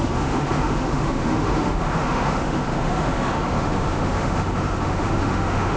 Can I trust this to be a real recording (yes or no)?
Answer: no